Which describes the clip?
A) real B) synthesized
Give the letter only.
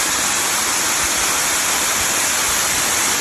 A